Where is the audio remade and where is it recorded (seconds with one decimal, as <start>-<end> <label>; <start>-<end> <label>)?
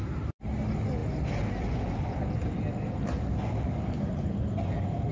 0.0-5.1 recorded